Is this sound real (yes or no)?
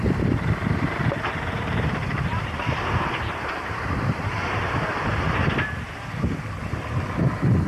no